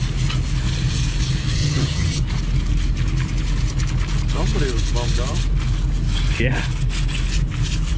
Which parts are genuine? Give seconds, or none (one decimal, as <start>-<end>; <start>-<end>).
0.0-1.6; 2.2-8.0